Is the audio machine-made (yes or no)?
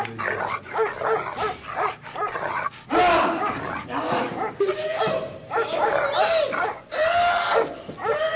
no